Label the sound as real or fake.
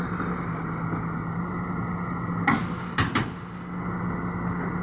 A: real